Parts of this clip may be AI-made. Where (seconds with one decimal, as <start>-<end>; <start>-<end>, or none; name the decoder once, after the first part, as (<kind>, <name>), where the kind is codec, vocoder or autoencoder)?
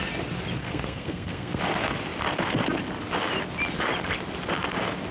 0.6-1.6 (codec, SNAC)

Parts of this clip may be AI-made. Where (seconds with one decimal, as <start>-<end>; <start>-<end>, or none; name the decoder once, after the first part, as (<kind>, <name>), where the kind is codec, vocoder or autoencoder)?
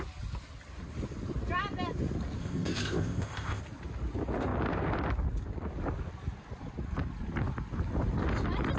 2.4-3.6 (codec, ZipCodec)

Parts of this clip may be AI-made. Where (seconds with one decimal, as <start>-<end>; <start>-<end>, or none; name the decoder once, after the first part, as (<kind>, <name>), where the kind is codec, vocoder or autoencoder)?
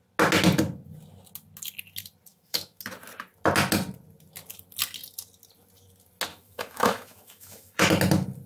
2.3-2.8 (autoencoder, DAC-VAE); 6.3-7.9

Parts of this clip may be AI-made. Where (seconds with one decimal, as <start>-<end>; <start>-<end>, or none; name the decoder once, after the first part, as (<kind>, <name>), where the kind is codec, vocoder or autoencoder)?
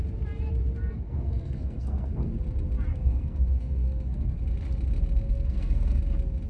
0.9-2.3 (codec, SNAC); 2.9-4.4; 5.3-6.0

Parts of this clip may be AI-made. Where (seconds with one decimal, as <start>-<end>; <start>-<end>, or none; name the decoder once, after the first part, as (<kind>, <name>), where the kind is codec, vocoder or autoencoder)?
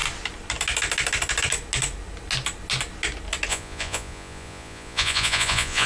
3.5-5.9 (vocoder, Vocos)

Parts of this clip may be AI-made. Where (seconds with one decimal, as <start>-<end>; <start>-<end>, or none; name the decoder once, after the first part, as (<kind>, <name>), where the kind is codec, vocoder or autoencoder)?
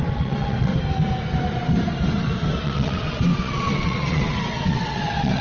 0.0-0.7 (vocoder, WaveNeXt); 2.6-5.4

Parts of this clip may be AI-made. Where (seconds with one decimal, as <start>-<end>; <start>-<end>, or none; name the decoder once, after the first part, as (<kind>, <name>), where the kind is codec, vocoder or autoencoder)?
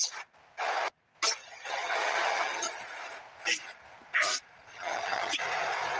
1.4-2.7 (vocoder, HiFi-GAN); 4.7-5.4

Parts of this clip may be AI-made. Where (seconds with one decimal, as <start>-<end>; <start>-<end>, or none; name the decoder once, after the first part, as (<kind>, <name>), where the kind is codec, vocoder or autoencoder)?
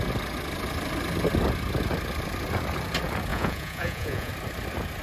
3.3-4.3 (vocoder, Vocos)